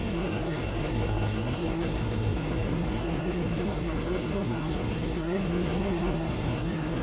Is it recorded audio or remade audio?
remade